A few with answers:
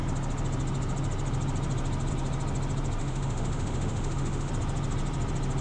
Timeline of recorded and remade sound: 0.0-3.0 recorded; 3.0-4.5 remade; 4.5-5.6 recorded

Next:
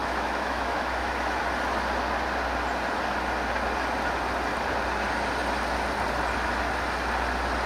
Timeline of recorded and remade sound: 0.0-1.4 remade; 1.4-7.7 recorded

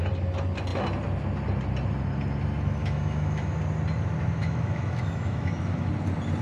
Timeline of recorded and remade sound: 0.0-2.8 recorded; 2.8-3.6 remade; 3.6-4.4 recorded; 4.4-5.9 remade; 5.9-6.4 recorded

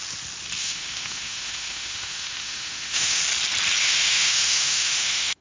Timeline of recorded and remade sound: 0.0-0.6 recorded; 0.6-3.2 remade; 3.2-3.8 recorded; 3.8-5.4 remade

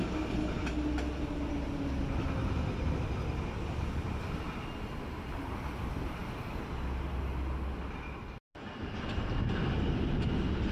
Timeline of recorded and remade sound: 0.0-10.7 recorded

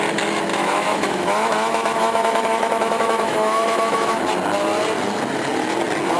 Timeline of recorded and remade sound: 0.0-0.5 recorded; 0.5-4.2 remade; 4.2-6.2 recorded

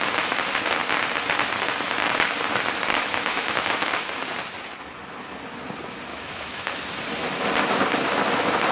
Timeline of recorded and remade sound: 0.0-2.9 recorded; 2.9-3.7 remade; 3.7-6.1 recorded; 6.1-6.8 remade; 6.8-8.7 recorded